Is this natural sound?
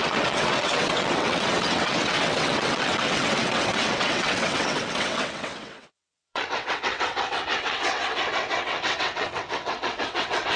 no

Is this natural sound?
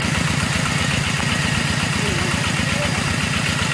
yes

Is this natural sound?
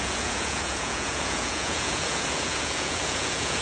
no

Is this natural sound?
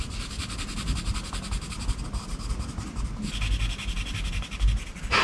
yes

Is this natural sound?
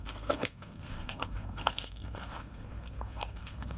no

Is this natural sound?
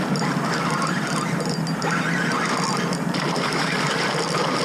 yes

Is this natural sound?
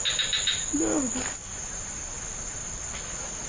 yes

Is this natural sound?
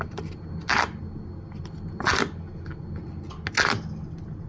yes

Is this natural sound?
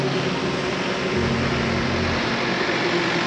yes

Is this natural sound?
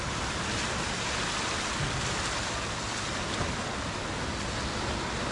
yes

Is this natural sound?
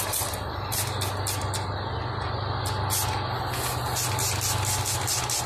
yes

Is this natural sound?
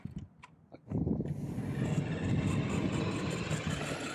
yes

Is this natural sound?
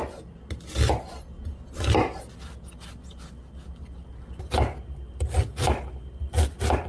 yes